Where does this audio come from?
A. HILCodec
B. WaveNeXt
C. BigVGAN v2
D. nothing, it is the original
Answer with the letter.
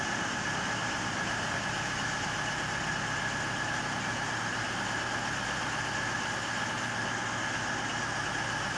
D